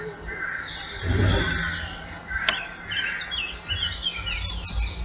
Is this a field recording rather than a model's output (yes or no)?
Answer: yes